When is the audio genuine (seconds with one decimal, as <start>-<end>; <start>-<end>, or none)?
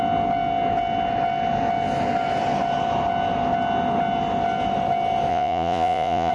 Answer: 0.0-5.3